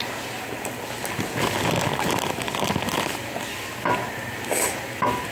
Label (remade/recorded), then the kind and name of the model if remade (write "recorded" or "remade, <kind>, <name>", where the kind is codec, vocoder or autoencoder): recorded